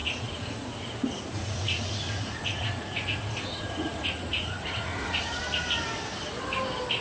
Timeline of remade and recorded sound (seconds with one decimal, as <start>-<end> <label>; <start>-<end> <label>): 0.0-0.7 remade; 0.7-1.3 recorded; 1.3-5.4 remade; 5.4-7.0 recorded